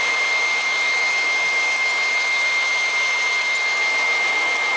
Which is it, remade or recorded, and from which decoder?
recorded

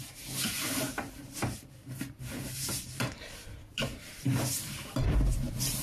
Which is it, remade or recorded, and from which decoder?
remade, vocoder, BigVGAN v2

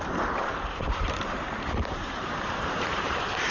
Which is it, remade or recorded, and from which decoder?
remade, vocoder, BigVGAN v2